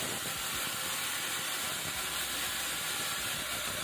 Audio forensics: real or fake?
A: real